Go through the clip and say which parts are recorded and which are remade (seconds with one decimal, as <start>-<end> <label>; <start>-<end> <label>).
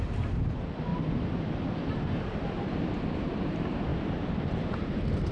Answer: 0.0-0.9 remade; 0.9-1.8 recorded; 1.8-3.9 remade; 3.9-4.6 recorded; 4.6-5.3 remade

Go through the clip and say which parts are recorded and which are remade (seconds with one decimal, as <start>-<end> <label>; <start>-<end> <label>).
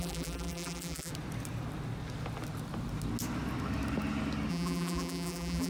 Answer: 0.0-1.1 remade; 1.1-4.5 recorded; 4.5-5.7 remade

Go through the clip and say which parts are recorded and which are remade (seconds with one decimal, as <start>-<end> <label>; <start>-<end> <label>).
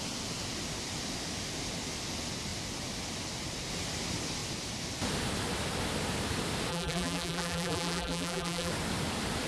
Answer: 0.0-6.7 recorded; 6.7-8.7 remade; 8.7-9.5 recorded